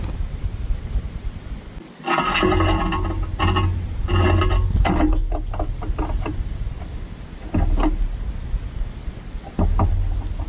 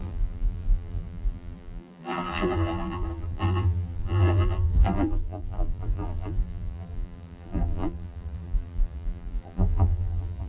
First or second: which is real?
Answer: first